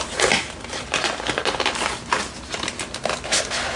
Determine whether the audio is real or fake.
real